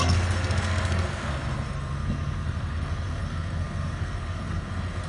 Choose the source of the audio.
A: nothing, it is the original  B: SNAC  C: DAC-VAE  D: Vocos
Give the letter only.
B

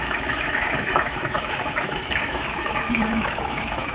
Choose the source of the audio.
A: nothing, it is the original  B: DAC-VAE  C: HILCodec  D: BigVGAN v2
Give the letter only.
B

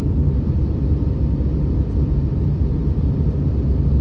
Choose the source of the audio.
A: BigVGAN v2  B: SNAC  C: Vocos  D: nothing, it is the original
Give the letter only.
D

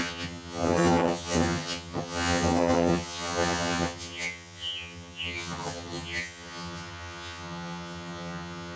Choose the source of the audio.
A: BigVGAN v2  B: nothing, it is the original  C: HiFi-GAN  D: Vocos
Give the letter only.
C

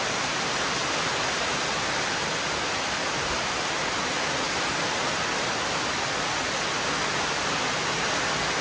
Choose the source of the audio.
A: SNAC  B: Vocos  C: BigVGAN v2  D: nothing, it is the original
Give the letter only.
D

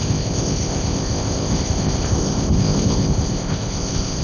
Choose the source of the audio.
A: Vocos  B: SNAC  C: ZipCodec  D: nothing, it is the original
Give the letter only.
C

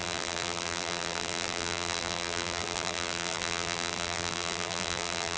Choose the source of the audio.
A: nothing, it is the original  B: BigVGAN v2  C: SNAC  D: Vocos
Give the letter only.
B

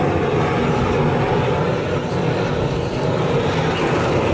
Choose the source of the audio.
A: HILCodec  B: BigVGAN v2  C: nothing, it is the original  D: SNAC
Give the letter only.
C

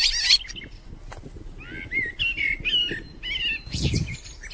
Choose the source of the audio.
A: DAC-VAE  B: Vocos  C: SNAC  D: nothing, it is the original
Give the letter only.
D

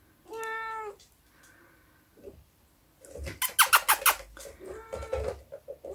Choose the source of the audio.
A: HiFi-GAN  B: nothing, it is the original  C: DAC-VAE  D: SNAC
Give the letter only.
B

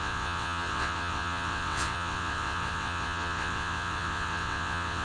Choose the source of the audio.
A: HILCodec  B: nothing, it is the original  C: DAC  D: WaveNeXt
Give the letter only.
D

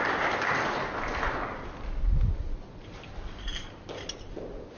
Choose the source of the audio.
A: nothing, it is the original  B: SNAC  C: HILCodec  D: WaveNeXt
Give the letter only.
A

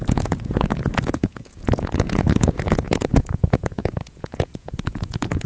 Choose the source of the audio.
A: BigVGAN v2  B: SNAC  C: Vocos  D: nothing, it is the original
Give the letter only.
C